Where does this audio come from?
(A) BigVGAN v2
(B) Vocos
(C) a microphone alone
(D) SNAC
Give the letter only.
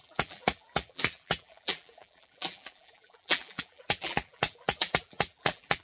A